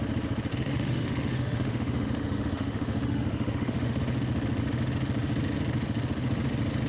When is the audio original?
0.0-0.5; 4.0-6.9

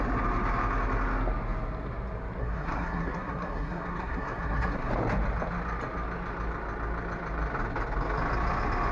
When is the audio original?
0.0-2.4; 4.9-8.9

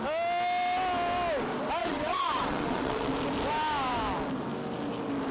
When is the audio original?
0.0-1.8; 3.1-5.3

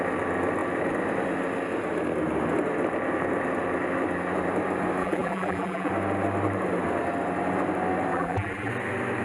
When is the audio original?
0.0-5.0; 5.9-8.1; 8.7-9.2

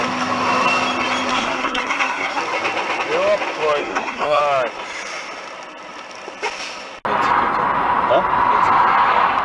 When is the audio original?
0.0-1.3; 2.4-3.8; 4.4-9.4

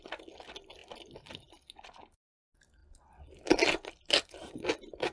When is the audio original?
0.0-5.1

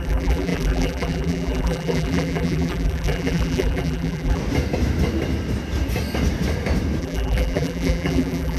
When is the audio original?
4.4-7.0

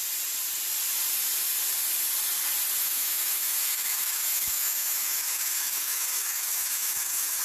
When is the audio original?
0.0-2.8